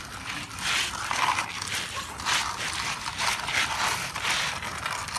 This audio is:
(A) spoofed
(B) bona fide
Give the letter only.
B